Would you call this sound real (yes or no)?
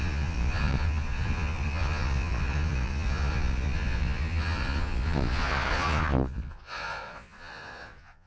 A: no